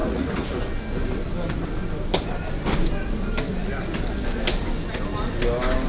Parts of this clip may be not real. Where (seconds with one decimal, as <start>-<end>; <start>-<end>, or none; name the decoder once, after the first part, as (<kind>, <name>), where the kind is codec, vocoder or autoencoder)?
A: 0.0-0.6 (vocoder, Vocos)